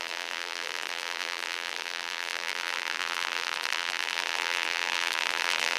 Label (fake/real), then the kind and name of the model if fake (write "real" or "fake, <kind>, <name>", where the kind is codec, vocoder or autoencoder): fake, vocoder, BigVGAN v2